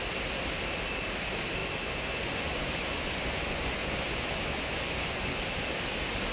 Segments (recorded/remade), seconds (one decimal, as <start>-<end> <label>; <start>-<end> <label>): 0.0-1.6 recorded; 1.6-5.4 remade; 5.4-6.3 recorded